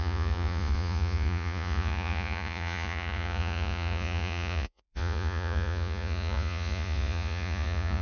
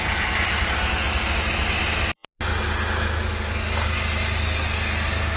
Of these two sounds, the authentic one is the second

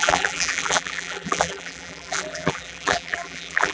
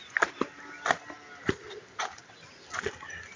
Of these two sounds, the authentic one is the second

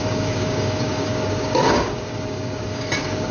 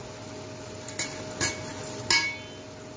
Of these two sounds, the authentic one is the second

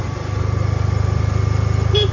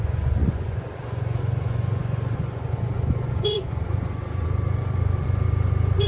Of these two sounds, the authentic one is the first